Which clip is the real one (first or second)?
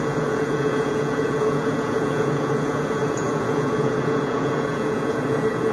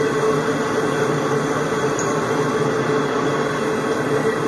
second